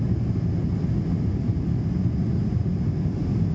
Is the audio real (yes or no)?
yes